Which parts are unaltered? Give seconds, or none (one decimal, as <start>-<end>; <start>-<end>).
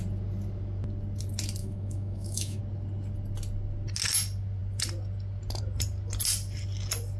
0.0-1.6; 2.6-7.2